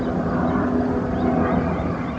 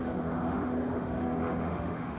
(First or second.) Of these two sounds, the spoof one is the second